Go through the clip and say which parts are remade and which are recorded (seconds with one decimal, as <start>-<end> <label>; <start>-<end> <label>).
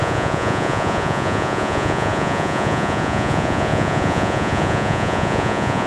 0.0-5.9 remade